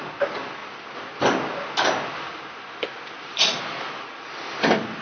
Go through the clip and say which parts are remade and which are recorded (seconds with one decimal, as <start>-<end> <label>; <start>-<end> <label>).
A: 0.0-5.0 recorded